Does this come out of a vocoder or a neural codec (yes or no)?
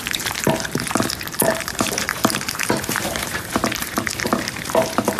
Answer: yes